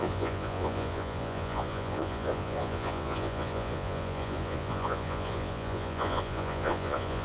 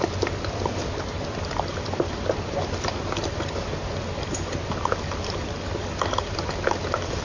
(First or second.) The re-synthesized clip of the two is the first